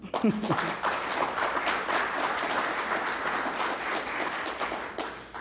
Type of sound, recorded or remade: recorded